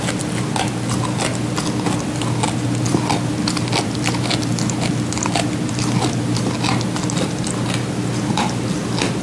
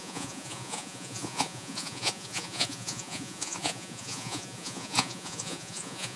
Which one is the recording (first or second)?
first